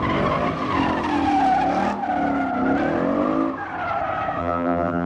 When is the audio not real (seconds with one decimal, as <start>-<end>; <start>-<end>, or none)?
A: 4.4-5.1